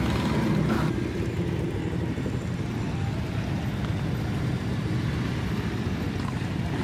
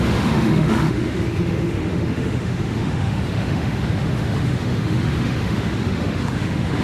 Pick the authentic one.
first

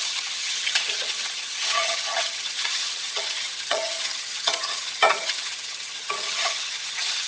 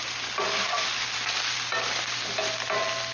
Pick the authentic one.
second